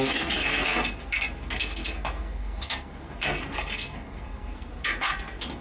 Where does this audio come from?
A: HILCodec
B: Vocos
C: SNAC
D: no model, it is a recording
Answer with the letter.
C